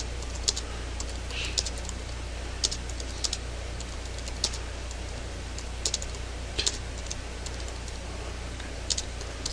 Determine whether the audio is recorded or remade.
recorded